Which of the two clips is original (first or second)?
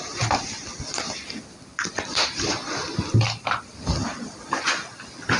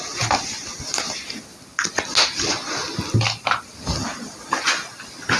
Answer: second